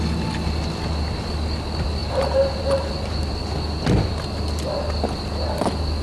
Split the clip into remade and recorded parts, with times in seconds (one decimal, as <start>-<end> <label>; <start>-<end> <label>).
0.0-2.0 recorded; 2.0-3.3 remade; 3.3-6.0 recorded